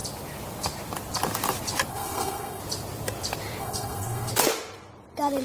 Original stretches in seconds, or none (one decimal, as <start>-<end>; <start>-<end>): 0.0-1.9; 2.6-3.6; 4.3-5.4